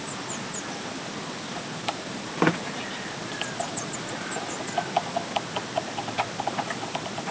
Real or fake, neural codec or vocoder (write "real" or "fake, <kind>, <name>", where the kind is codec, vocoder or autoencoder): real